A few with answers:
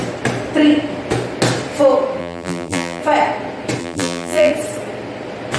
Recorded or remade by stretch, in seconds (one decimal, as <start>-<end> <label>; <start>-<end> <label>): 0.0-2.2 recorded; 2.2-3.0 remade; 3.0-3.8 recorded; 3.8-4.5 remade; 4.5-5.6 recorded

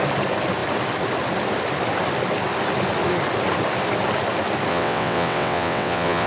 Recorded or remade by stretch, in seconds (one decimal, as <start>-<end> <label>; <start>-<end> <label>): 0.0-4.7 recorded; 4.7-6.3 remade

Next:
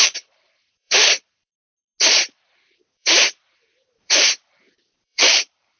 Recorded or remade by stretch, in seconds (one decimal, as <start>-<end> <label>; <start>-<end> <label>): 0.0-1.5 remade; 1.5-2.8 recorded; 2.8-5.8 remade

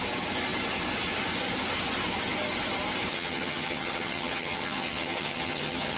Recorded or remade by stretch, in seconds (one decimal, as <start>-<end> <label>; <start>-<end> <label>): 0.0-3.1 recorded; 3.1-6.0 remade